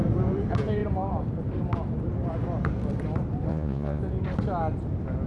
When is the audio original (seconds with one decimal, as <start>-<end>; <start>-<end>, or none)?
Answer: 0.0-3.5; 4.0-5.3